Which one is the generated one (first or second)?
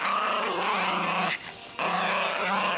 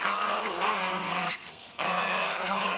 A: second